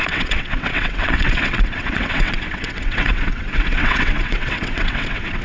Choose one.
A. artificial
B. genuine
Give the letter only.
A